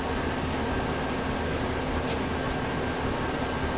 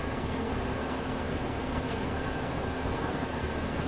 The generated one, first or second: second